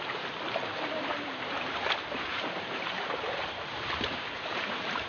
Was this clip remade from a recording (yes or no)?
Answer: yes